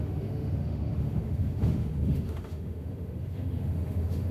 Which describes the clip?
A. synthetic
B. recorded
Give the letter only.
A